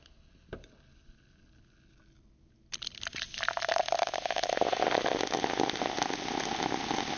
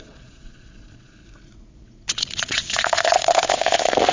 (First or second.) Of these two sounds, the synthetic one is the second